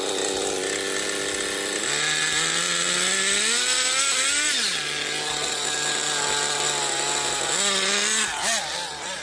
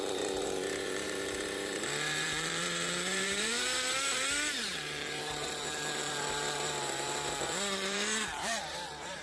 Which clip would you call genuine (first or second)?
first